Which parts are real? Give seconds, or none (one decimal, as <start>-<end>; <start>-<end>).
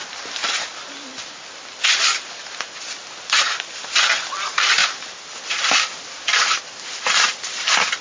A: 0.0-8.0